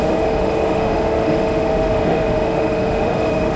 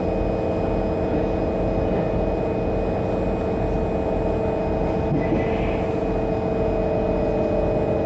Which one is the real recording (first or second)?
second